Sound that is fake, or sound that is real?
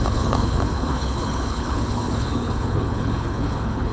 fake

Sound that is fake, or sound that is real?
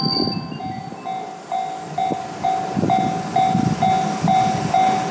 real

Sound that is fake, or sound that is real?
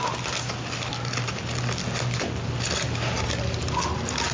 real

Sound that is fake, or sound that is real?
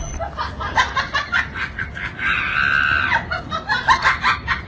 real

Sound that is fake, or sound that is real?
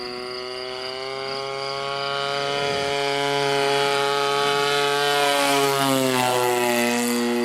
real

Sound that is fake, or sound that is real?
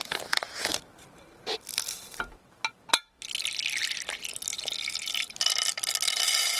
fake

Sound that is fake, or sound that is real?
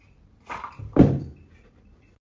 fake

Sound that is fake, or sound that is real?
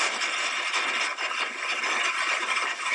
real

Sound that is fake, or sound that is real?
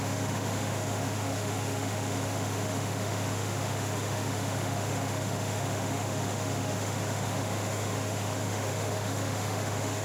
fake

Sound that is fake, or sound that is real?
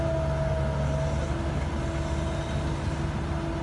real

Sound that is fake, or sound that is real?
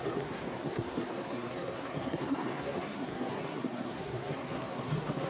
fake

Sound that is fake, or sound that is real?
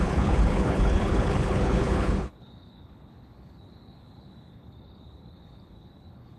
fake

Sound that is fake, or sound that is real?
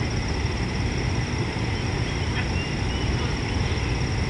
real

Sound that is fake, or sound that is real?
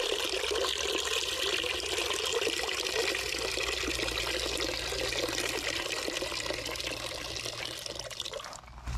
real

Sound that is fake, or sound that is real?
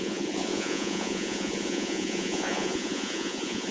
fake